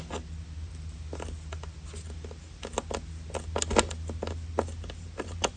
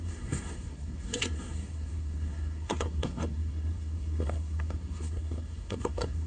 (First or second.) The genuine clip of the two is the first